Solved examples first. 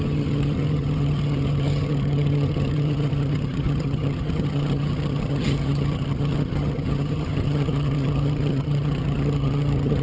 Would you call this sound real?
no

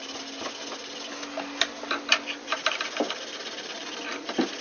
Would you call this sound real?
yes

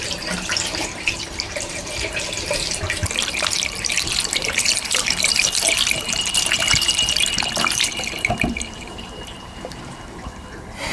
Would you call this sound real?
no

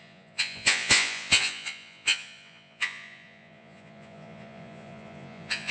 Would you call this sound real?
no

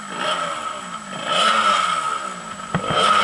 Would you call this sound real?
yes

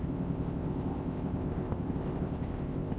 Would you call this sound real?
no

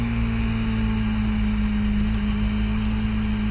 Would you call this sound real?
yes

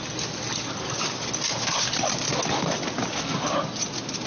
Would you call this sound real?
yes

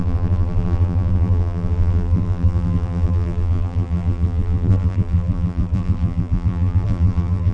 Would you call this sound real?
no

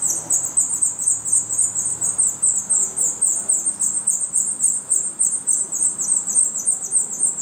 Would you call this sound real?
yes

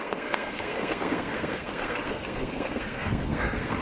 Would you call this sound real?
no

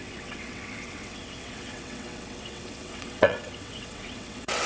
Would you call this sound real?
no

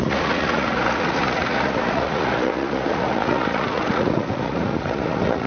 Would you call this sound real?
no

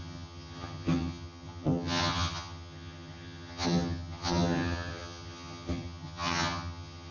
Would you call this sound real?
no